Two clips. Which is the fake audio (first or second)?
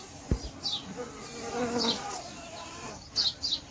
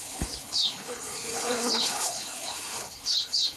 second